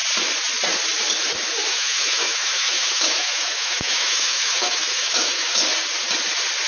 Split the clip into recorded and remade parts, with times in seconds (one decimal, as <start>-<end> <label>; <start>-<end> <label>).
0.0-1.7 recorded; 1.7-5.6 remade; 5.6-6.7 recorded